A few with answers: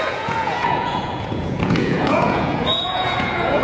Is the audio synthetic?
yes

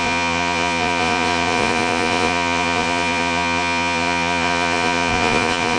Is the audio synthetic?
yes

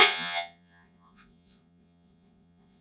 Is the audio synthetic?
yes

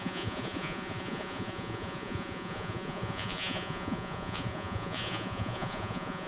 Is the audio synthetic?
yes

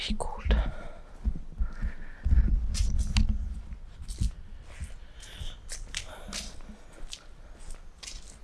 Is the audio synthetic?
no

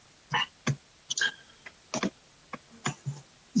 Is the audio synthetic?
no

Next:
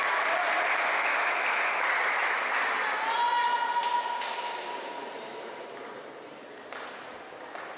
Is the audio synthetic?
no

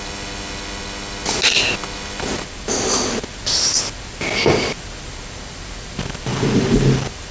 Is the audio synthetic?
no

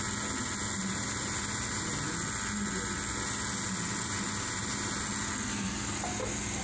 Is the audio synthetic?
no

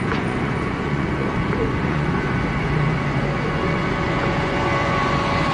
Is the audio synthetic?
yes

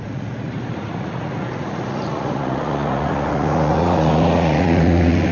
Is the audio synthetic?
yes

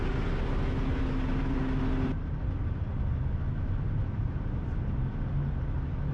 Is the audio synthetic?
no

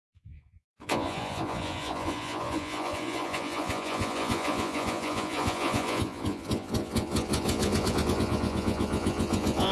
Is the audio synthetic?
yes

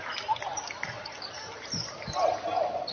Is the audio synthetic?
no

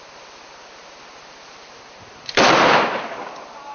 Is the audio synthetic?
no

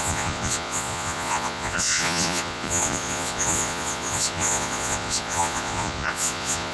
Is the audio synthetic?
yes